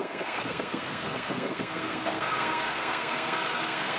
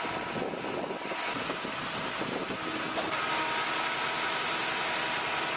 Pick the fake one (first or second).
first